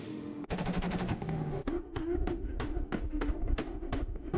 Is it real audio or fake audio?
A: fake